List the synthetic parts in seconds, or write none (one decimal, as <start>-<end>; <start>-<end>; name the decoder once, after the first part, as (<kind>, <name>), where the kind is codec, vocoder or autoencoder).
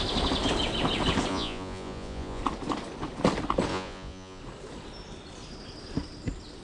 1.3-2.4 (vocoder, Vocos); 3.7-4.4